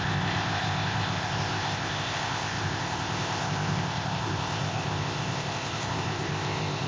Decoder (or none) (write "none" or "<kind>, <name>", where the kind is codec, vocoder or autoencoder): codec, ZipCodec